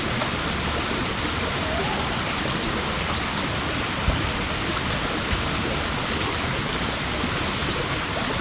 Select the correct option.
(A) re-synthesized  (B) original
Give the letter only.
B